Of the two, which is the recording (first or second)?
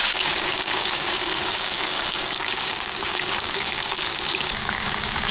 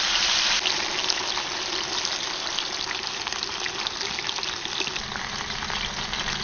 second